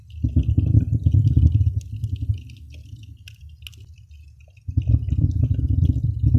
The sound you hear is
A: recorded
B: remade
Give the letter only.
A